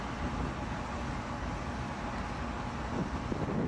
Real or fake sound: real